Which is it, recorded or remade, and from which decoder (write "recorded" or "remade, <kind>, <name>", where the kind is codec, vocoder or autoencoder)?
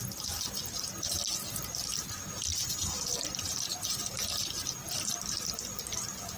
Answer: recorded